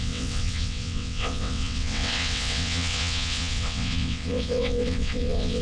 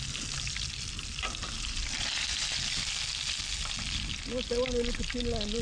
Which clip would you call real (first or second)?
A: second